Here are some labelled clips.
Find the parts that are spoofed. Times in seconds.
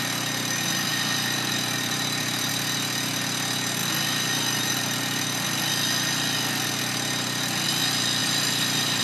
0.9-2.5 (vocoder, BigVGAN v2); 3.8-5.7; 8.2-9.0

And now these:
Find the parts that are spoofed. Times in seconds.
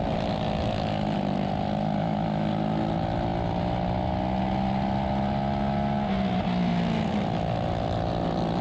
2.0-2.5 (autoencoder, DAC-VAE)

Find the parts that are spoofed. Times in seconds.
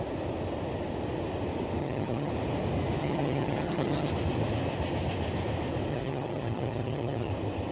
1.8-2.3 (vocoder, HiFi-GAN); 3.0-4.1; 5.9-7.3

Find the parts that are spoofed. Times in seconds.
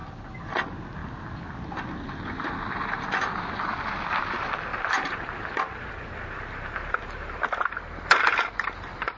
4.7-9.2 (vocoder, BigVGAN v2)